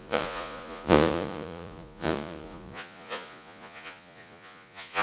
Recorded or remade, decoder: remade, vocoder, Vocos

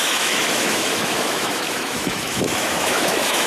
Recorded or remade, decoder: remade, autoencoder, DAC-VAE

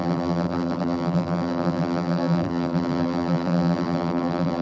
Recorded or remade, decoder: remade, vocoder, BigVGAN v2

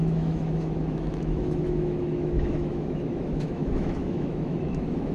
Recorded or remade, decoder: remade, autoencoder, DAC-VAE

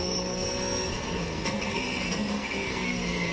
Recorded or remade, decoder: remade, codec, SNAC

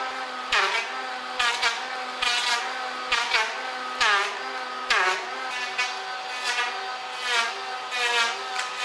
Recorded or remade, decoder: recorded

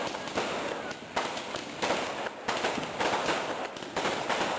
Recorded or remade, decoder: recorded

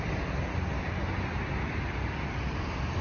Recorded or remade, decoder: recorded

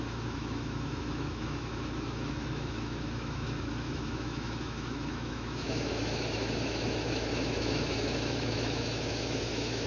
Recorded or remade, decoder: remade, autoencoder, DAC-VAE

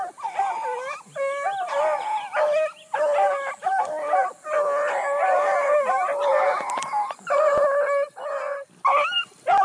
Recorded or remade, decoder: recorded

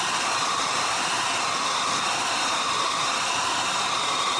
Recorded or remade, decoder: recorded